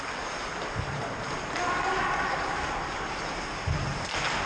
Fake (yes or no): no